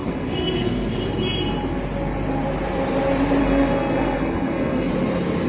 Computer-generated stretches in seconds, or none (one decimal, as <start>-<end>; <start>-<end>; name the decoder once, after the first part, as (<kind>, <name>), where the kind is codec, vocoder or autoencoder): 0.0-1.0 (codec, SNAC); 3.4-4.9